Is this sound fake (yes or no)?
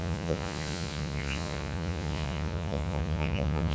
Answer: yes